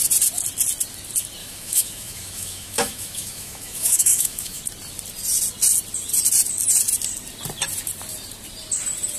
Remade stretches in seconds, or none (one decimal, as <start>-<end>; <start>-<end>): 1.4-4.6